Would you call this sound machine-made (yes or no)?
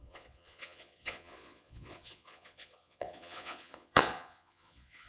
yes